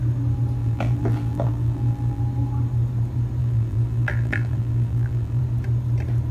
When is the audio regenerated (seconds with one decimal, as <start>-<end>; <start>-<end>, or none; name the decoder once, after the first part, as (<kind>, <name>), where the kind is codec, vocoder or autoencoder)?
0.6-2.2 (vocoder, BigVGAN v2); 3.4-5.4